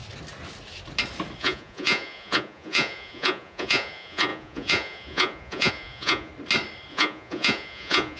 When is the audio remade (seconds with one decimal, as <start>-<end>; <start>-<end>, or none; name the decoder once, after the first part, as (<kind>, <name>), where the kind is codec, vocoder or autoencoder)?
1.4-6.3 (vocoder, Vocos); 6.9-8.2